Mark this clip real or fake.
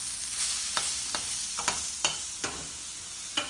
real